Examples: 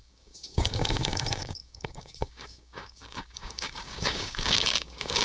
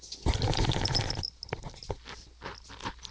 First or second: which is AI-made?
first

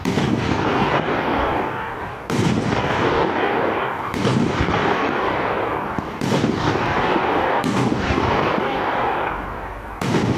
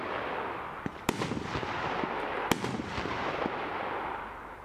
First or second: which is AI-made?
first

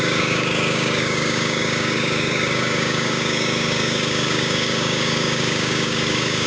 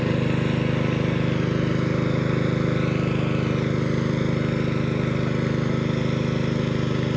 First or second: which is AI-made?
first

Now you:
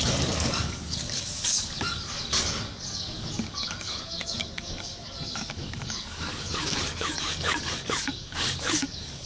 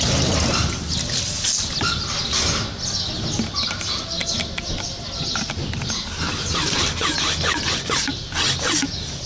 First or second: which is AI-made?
first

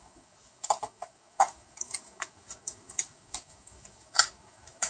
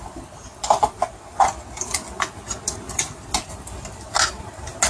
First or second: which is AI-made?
first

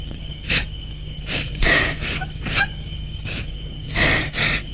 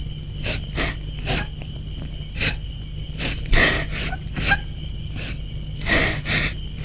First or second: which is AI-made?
first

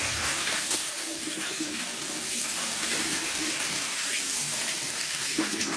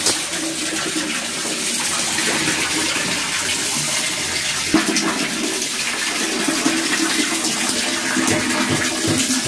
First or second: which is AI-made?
first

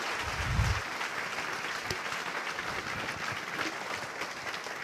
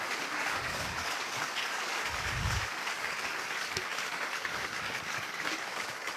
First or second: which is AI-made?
second